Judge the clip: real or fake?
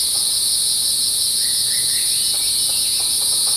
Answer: fake